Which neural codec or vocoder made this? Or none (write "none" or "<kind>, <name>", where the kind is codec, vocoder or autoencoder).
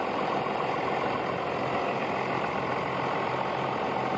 none